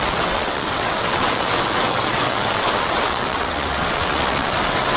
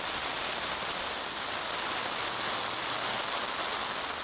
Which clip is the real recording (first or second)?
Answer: second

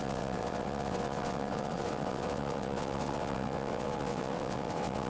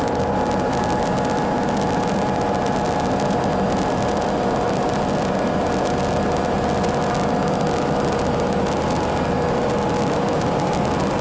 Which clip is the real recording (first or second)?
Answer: second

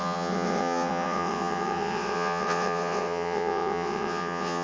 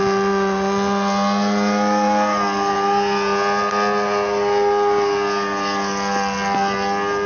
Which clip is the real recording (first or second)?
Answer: second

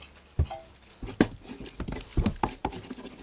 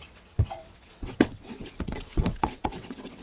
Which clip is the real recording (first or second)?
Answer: first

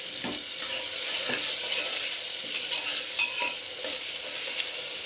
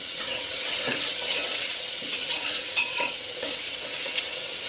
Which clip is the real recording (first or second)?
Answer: first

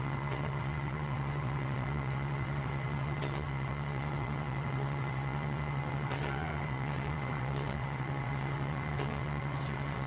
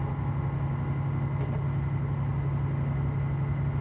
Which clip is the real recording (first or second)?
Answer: second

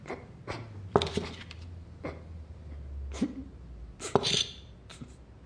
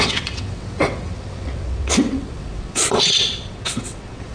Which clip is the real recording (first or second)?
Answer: first